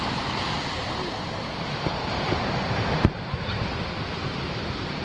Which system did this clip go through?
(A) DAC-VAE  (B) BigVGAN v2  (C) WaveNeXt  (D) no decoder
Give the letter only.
B